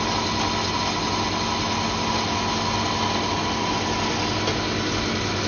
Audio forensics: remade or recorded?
recorded